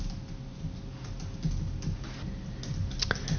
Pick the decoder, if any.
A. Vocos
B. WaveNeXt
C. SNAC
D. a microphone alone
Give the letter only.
D